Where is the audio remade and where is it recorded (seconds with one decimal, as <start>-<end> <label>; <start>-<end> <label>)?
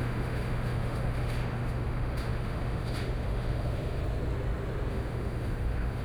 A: 0.0-4.0 remade; 4.0-4.9 recorded; 4.9-6.0 remade